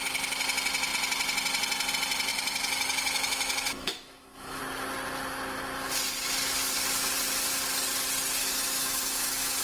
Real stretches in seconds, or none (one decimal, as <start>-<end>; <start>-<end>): 0.0-2.3; 4.6-8.4